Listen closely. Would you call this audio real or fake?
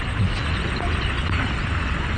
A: real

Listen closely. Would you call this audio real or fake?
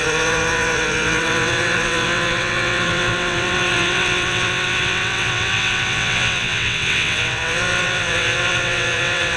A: fake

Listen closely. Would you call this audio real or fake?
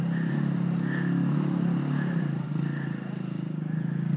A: real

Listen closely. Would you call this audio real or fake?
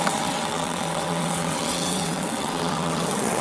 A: fake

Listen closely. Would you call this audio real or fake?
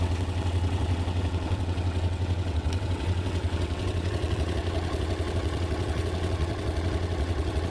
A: fake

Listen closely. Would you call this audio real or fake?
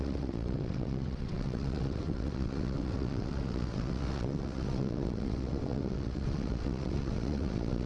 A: fake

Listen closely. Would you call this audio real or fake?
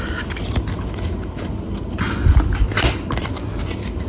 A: real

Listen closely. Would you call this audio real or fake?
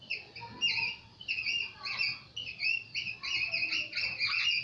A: real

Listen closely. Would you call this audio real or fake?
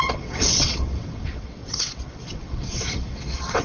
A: fake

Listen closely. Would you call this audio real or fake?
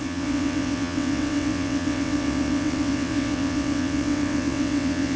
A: fake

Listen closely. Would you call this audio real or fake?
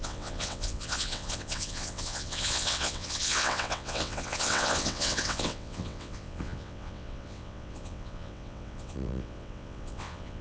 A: fake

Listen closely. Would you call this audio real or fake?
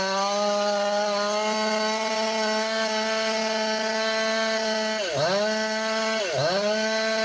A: real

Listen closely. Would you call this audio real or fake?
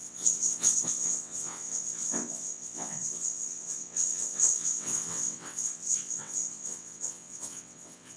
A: fake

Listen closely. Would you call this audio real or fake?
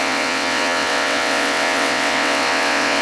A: fake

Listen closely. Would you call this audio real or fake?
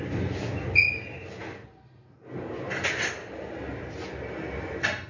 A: real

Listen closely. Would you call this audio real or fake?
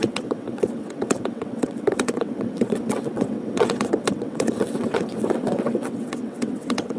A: fake